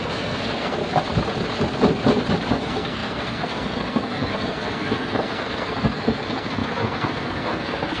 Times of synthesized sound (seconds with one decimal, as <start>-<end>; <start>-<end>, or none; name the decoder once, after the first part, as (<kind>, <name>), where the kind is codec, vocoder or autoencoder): 0.0-0.8 (codec, SNAC); 2.5-8.0